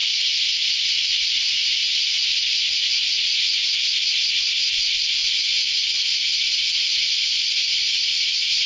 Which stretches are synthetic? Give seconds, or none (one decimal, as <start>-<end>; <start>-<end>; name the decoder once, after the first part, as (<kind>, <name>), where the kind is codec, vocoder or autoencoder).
none